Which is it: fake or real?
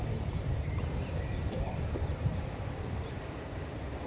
fake